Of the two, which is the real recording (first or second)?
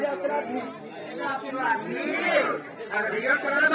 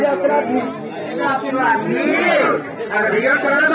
second